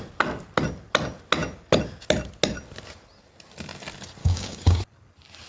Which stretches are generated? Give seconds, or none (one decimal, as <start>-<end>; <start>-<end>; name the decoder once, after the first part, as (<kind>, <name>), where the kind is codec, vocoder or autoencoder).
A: 4.2-4.8 (codec, DAC)